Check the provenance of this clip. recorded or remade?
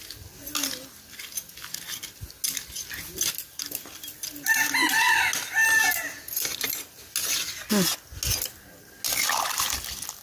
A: recorded